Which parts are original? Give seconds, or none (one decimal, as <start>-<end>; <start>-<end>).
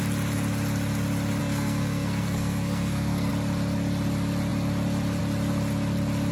0.0-1.4; 3.3-6.3